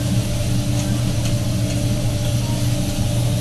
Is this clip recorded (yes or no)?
yes